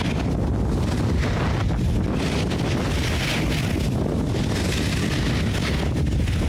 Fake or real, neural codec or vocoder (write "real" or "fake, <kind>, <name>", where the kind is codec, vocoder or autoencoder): real